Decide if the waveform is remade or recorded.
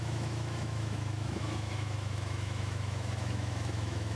remade